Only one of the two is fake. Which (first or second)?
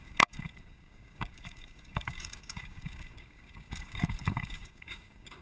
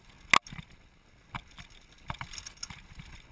first